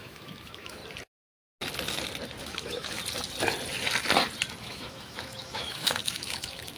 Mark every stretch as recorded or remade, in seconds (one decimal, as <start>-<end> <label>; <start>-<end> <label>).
0.0-0.8 remade; 0.8-2.4 recorded; 2.4-3.0 remade; 3.0-4.6 recorded; 4.6-6.8 remade